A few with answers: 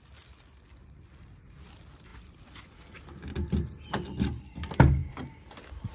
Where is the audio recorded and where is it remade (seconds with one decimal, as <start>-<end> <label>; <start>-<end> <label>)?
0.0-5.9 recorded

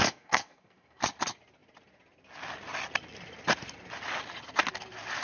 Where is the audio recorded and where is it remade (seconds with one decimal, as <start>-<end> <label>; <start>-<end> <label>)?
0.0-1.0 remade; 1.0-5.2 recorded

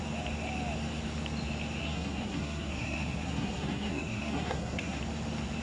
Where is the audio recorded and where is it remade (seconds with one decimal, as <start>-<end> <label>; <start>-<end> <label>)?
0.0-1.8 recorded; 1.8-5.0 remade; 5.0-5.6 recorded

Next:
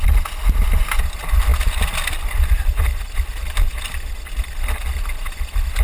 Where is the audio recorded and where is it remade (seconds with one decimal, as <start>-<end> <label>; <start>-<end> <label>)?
0.0-5.8 recorded

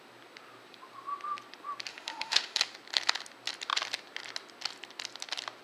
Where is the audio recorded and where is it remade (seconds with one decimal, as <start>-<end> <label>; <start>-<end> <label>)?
0.0-1.9 recorded; 1.9-2.6 remade; 2.6-5.6 recorded

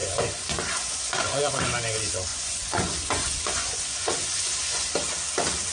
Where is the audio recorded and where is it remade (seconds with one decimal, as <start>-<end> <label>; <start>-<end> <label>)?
0.0-1.6 remade; 1.6-2.3 recorded; 2.3-4.9 remade; 4.9-5.7 recorded

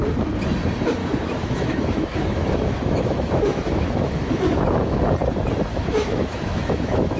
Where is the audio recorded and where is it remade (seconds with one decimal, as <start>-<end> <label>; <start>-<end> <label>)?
0.0-1.0 recorded; 1.0-5.0 remade; 5.0-5.7 recorded; 5.7-7.2 remade

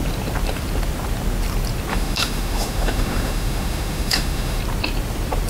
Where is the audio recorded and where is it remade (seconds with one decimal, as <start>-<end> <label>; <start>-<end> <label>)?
0.0-1.9 recorded; 1.9-4.6 remade; 4.6-5.5 recorded